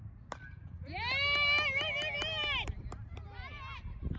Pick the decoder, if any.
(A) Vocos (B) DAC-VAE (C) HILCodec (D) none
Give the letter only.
D